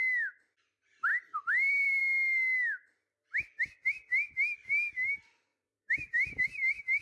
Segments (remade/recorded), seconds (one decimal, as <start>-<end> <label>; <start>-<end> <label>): 0.0-1.1 recorded; 1.1-2.0 remade; 2.0-2.8 recorded; 2.8-3.5 remade; 3.5-5.5 recorded; 5.5-7.0 remade